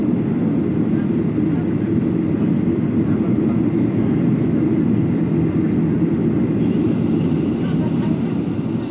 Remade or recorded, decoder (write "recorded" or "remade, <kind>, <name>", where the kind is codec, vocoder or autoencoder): recorded